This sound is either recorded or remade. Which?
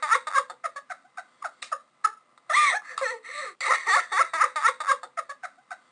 recorded